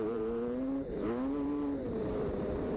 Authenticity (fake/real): fake